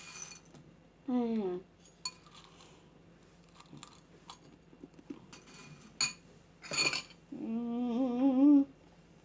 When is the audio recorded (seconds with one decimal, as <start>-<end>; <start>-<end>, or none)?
0.0-9.2